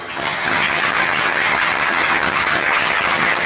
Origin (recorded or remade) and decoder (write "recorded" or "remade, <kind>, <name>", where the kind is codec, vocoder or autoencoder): remade, vocoder, HiFi-GAN